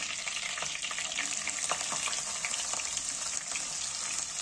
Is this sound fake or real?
real